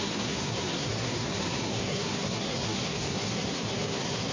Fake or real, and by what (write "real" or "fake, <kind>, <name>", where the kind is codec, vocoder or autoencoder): fake, codec, SNAC